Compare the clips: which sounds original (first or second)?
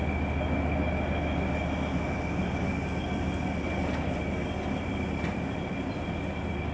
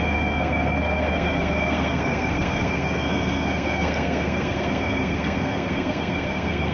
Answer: first